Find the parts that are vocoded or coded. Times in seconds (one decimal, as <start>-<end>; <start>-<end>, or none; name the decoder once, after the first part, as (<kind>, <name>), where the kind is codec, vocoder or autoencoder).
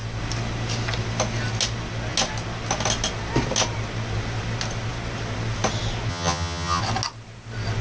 6.1-6.8 (vocoder, HiFi-GAN)